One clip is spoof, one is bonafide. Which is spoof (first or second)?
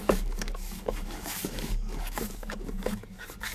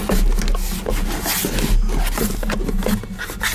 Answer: first